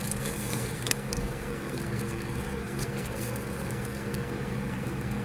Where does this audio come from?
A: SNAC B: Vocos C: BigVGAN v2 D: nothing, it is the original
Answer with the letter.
A